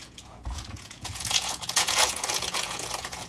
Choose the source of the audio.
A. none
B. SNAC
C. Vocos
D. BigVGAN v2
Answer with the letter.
C